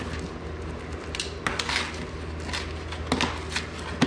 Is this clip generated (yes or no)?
no